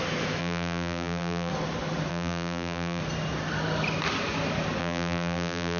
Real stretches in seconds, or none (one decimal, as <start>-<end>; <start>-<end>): 0.0-0.4; 1.5-2.1; 3.0-4.8